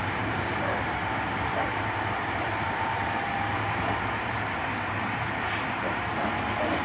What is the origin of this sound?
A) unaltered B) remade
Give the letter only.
B